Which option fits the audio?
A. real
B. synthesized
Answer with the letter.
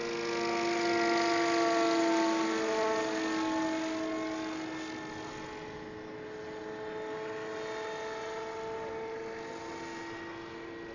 A